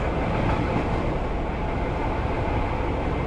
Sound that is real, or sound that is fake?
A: real